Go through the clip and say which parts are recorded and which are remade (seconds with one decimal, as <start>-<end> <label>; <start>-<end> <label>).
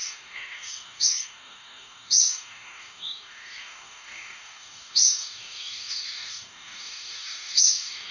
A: 0.0-8.1 remade